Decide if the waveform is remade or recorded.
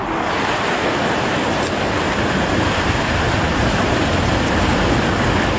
recorded